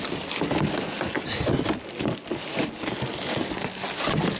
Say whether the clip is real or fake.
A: real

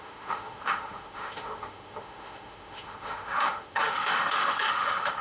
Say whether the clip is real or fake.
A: fake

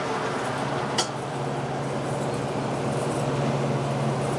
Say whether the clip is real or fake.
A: real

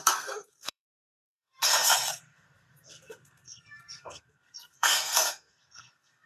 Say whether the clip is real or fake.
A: fake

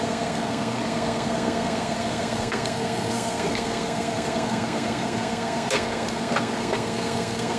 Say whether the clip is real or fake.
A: fake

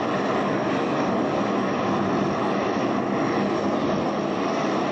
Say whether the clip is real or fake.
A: real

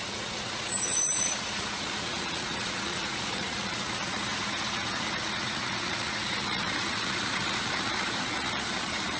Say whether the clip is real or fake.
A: fake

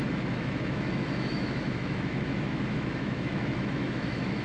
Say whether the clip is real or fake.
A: fake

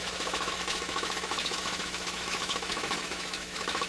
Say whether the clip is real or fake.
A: fake